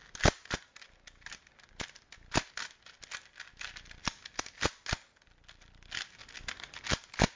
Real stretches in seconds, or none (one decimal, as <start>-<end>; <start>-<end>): 0.0-7.4